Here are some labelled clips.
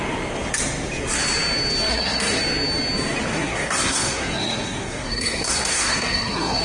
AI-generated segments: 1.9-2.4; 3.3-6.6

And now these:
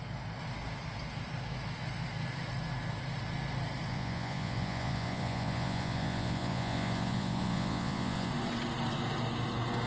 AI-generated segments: 3.9-8.3

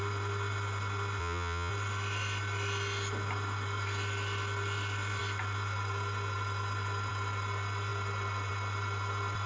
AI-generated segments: 1.2-1.7

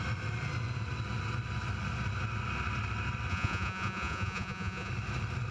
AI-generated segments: 3.3-4.9